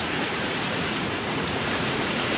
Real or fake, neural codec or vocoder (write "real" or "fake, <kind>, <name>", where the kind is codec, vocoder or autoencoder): fake, vocoder, Vocos